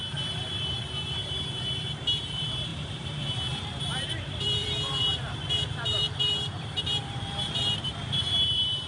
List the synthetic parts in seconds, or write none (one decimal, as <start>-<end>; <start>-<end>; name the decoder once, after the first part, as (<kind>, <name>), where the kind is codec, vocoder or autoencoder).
0.0-8.9 (vocoder, BigVGAN v2)